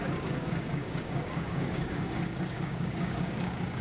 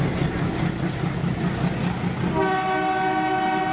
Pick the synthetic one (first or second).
first